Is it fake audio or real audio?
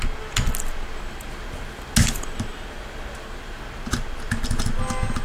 real